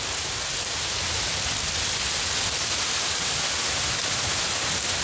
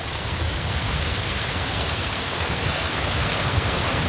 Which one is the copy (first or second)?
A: second